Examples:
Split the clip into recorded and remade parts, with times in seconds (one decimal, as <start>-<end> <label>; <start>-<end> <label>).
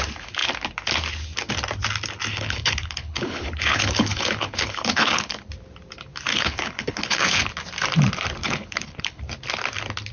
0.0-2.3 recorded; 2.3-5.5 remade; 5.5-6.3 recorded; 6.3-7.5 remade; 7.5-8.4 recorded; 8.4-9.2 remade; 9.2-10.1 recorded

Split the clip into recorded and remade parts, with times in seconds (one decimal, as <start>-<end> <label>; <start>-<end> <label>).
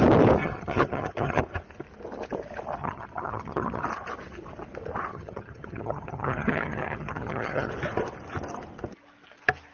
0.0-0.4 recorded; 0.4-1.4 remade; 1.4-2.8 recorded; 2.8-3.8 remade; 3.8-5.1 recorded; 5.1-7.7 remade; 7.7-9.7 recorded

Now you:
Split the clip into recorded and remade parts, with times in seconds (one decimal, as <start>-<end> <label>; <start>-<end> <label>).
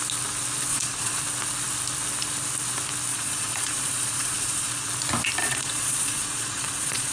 0.0-0.7 recorded; 0.7-1.2 remade; 1.2-3.1 recorded; 3.1-4.9 remade; 4.9-5.4 recorded; 5.4-7.1 remade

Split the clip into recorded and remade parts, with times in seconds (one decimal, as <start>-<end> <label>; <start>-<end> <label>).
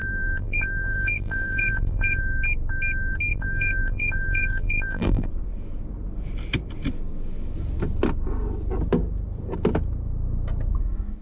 0.0-2.2 remade; 2.2-3.3 recorded; 3.3-5.3 remade; 5.3-11.2 recorded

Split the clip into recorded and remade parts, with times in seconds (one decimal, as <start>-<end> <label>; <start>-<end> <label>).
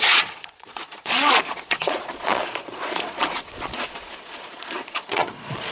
0.0-5.7 remade